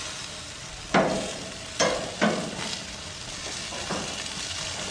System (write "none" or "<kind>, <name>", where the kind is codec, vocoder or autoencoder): none